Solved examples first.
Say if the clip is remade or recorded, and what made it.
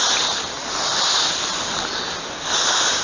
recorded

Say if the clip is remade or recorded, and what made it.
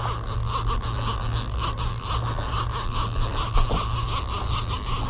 recorded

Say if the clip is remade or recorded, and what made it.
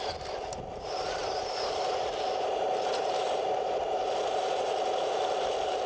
recorded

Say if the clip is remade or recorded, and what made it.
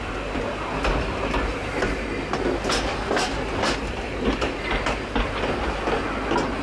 recorded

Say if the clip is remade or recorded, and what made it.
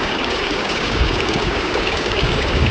remade, codec, DAC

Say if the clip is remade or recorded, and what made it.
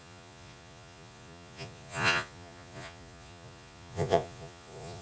remade, vocoder, Vocos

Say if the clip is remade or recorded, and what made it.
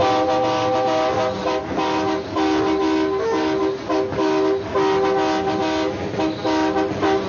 recorded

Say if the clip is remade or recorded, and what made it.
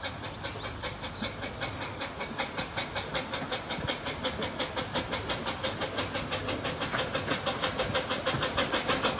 recorded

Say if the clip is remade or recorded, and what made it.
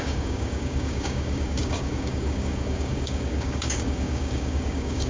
remade, codec, DAC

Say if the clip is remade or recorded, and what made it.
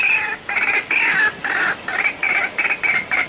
recorded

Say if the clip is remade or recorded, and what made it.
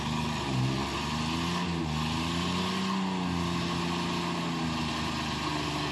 recorded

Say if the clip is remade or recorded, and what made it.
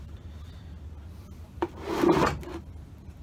recorded